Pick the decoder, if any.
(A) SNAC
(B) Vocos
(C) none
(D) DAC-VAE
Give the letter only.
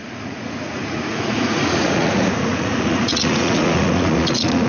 B